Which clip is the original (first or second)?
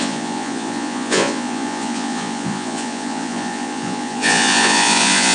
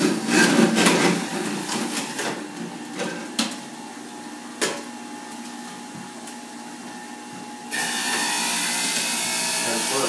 second